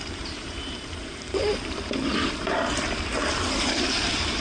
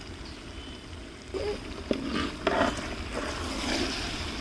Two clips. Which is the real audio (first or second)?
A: second